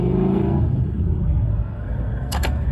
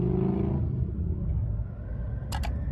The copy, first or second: first